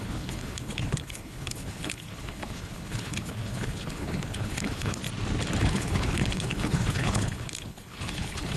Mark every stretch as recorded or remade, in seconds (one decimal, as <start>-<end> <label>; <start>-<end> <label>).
0.0-5.0 remade; 5.0-5.6 recorded; 5.6-8.6 remade

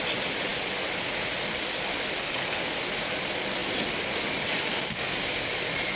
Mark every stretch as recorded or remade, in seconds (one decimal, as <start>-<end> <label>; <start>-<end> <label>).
0.0-2.2 recorded; 2.2-2.8 remade; 2.8-6.0 recorded

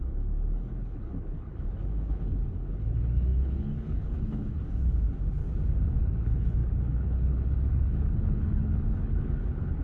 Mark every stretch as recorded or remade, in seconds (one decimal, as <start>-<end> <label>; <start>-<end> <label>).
0.0-5.4 remade; 5.4-6.0 recorded; 6.0-9.8 remade

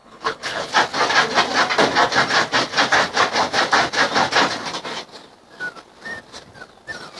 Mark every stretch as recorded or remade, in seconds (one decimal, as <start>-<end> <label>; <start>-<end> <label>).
0.0-0.7 remade; 0.7-7.2 recorded

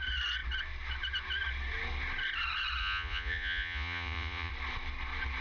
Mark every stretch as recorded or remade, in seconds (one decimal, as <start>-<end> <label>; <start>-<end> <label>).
0.0-2.8 recorded; 2.8-4.5 remade; 4.5-5.4 recorded